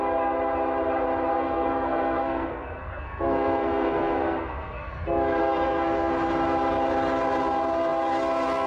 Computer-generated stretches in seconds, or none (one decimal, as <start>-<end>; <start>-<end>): 1.3-4.9; 5.4-6.1